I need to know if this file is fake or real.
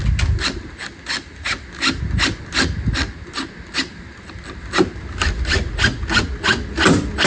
real